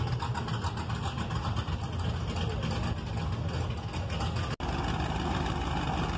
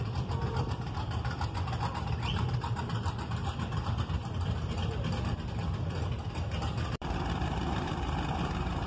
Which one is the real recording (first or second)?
first